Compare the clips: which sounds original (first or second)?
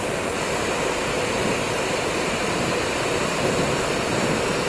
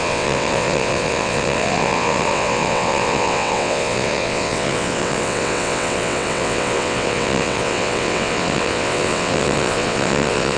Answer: first